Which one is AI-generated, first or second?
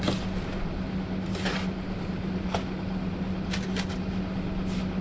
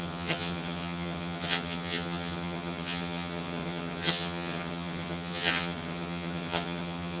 second